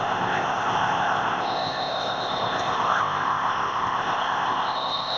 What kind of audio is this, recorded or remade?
remade